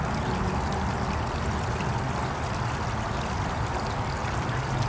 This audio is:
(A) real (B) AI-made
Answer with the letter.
A